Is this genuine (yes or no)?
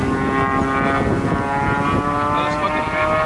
yes